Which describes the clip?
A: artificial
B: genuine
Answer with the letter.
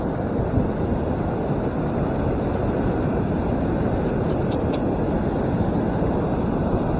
B